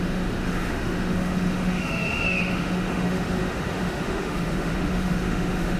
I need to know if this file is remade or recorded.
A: remade